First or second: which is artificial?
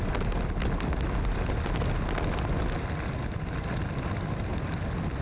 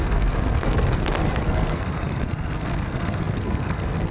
second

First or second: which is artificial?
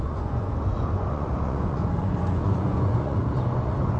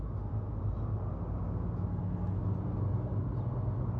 first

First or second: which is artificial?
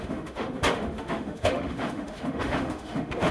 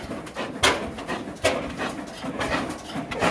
first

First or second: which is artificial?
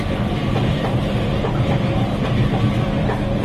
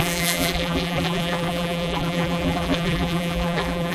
second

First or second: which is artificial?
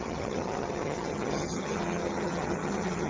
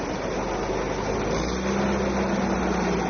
first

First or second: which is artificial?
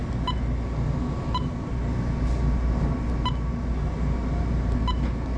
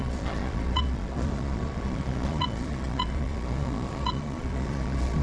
second